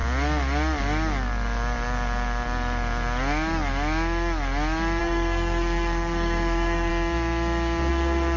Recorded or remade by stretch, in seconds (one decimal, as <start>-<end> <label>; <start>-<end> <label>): 0.0-5.0 recorded; 5.0-6.9 remade; 6.9-7.9 recorded; 7.9-8.4 remade